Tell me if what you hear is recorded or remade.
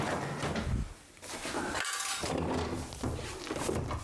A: recorded